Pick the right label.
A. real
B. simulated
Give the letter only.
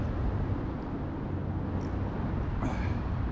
A